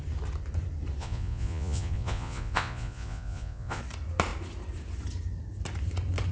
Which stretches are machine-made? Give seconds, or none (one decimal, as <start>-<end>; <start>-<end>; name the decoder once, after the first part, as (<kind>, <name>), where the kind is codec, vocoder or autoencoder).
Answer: 1.0-3.8 (vocoder, Vocos)